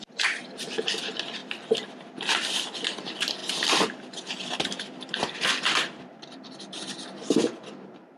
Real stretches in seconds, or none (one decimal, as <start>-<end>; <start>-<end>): 0.0-3.4